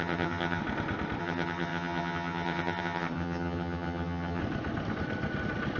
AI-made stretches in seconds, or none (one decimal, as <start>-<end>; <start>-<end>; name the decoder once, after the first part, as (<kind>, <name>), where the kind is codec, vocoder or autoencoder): 0.0-0.6 (vocoder, HiFi-GAN); 1.2-4.4